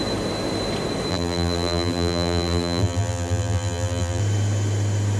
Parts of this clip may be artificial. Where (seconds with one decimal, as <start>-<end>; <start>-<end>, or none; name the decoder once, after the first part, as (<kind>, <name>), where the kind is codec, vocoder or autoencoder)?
1.1-4.2 (vocoder, BigVGAN v2)

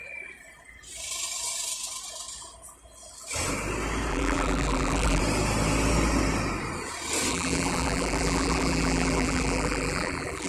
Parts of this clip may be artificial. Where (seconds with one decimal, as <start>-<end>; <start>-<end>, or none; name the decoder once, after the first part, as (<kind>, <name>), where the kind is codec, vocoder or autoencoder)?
4.1-5.2 (vocoder, BigVGAN v2); 7.3-10.5